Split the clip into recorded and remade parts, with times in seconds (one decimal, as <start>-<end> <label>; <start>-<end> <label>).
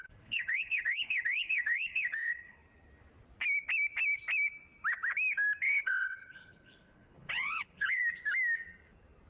0.0-2.6 remade; 2.6-5.6 recorded; 5.6-8.0 remade; 8.0-9.3 recorded